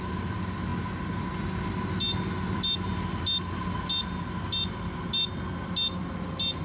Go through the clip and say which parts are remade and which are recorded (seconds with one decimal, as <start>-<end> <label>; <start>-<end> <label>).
0.0-6.6 recorded